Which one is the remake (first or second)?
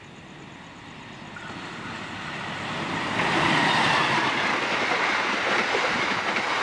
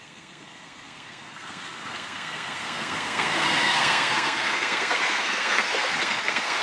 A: second